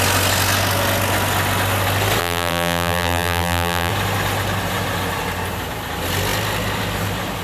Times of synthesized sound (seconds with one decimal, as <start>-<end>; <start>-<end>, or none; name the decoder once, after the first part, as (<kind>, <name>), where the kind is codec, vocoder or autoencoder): 2.2-3.9 (vocoder, BigVGAN v2)

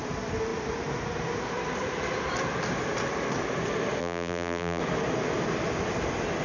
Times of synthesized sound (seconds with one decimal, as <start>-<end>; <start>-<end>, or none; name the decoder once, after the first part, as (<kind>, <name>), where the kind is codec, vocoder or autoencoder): 4.0-4.8 (vocoder, BigVGAN v2)

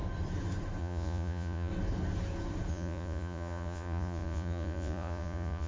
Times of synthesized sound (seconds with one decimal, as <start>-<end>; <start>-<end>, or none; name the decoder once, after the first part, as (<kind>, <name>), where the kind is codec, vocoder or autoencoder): 0.8-1.7 (vocoder, Vocos); 2.7-5.7

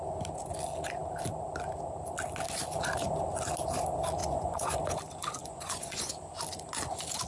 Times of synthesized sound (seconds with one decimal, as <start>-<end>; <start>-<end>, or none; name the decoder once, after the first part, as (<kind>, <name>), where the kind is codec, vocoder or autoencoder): 4.2-4.8 (vocoder, Vocos); 5.4-6.1